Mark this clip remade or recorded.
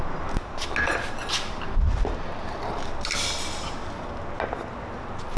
recorded